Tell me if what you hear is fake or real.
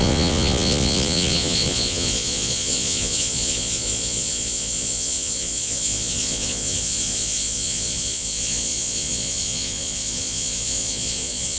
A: fake